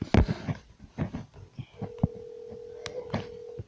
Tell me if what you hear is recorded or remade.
recorded